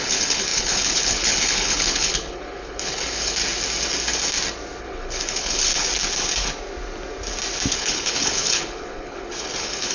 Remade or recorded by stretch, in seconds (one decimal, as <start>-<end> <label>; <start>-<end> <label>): 0.0-3.4 remade; 3.4-4.8 recorded; 4.8-5.7 remade; 5.7-7.7 recorded; 7.7-9.9 remade